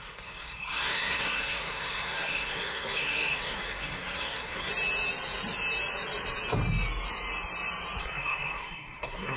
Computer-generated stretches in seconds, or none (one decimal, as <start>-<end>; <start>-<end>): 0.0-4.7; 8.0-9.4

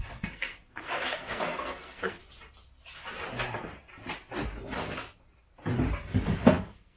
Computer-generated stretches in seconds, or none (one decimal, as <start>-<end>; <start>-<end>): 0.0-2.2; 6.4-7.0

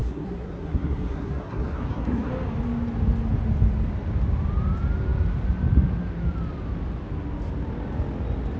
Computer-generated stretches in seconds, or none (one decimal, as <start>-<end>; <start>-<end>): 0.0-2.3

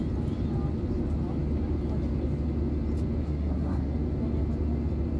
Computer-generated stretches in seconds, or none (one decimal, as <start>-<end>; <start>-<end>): 3.2-3.9